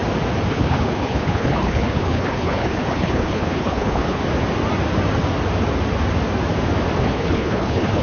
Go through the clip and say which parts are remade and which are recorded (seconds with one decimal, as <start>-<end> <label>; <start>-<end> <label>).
0.0-0.5 recorded; 0.5-4.2 remade; 4.2-7.0 recorded; 7.0-8.0 remade